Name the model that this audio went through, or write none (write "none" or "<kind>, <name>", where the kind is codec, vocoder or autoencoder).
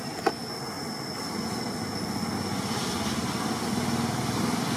none